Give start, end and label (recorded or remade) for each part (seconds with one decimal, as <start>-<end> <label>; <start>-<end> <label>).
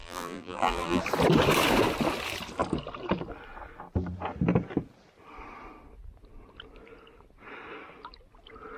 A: 0.0-1.0 remade; 1.0-8.8 recorded